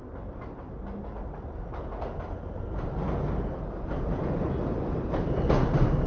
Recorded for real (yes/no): yes